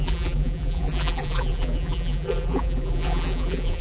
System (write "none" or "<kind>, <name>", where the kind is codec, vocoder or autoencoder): vocoder, BigVGAN v2